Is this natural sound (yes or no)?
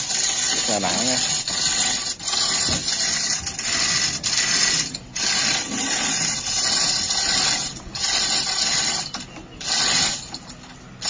yes